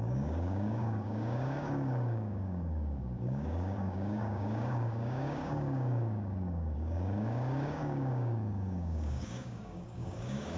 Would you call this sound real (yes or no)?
no